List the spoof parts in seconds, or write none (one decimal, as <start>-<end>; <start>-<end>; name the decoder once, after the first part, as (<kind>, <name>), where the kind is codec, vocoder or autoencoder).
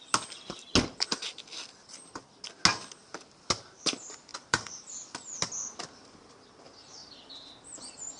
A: 4.3-5.7 (vocoder, BigVGAN v2); 7.0-8.2